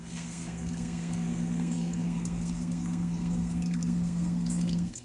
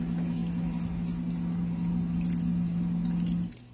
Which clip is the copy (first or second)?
first